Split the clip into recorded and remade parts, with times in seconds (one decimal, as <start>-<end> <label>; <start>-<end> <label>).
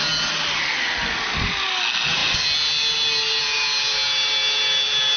0.0-5.2 recorded